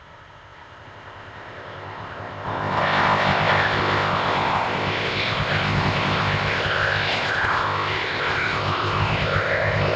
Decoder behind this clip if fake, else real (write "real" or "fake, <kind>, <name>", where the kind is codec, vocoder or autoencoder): fake, codec, ZipCodec